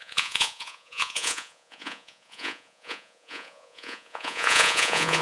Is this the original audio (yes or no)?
no